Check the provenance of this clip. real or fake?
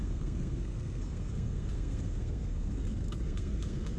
fake